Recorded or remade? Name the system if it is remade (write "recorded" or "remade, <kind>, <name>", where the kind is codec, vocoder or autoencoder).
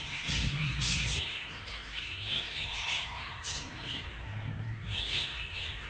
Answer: remade, codec, SNAC